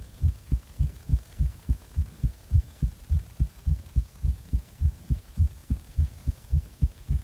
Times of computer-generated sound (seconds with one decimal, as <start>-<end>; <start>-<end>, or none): 0.0-2.8; 3.5-7.2